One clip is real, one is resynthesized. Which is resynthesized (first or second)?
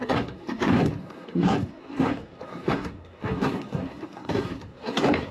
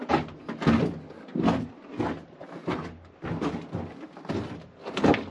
first